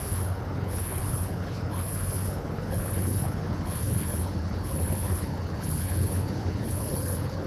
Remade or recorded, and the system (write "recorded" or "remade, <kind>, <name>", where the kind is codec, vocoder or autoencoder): remade, codec, HILCodec